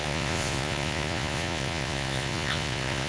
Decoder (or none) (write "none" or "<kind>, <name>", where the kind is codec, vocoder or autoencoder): vocoder, Vocos